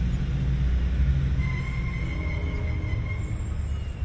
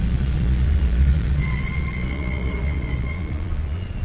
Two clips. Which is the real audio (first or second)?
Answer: first